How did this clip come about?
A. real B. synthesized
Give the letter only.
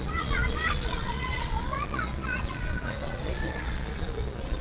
B